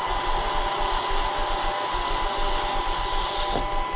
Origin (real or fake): real